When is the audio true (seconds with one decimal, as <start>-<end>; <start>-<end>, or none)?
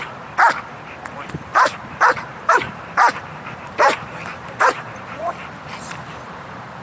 0.0-1.5; 5.3-6.8